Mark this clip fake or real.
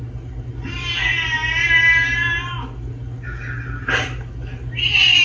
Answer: real